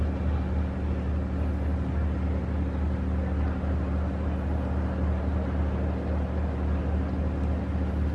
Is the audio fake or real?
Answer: real